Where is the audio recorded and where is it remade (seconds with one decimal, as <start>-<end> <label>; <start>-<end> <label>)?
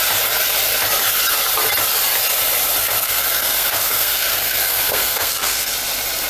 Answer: 0.0-2.8 recorded; 2.8-5.7 remade; 5.7-6.3 recorded